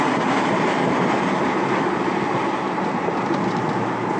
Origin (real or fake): real